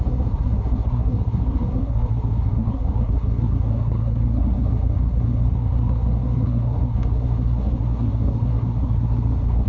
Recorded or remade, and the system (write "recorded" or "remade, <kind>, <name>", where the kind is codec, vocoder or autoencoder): remade, codec, SNAC